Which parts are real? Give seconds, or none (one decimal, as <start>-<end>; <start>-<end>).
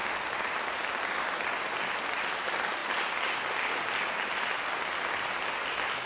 0.0-6.1